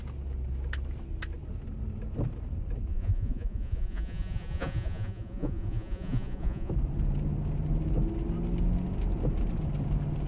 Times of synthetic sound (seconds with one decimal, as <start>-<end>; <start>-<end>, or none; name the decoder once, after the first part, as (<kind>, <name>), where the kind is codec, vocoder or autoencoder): 2.9-6.7 (vocoder, Vocos)